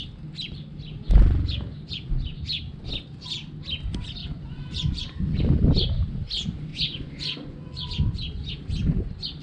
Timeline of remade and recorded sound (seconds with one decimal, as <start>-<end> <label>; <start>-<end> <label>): 0.0-4.2 recorded; 4.2-5.4 remade; 5.4-6.7 recorded; 6.7-8.5 remade; 8.5-9.4 recorded